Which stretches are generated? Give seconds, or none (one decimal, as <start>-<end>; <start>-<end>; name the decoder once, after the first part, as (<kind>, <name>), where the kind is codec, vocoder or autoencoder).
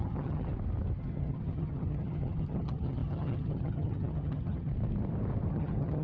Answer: 0.0-0.5 (vocoder, HiFi-GAN); 1.0-4.7; 5.5-6.0